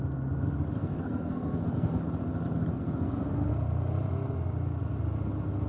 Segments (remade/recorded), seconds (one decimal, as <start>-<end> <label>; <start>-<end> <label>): 0.0-0.8 recorded; 0.8-2.0 remade; 2.0-2.7 recorded; 2.7-3.5 remade; 3.5-5.7 recorded